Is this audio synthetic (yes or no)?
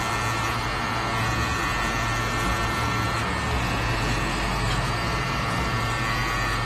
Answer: no